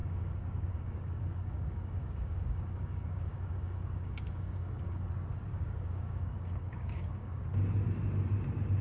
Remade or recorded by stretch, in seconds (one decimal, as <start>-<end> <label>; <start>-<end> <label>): 0.0-5.0 remade; 5.0-5.5 recorded; 5.5-7.4 remade; 7.4-8.8 recorded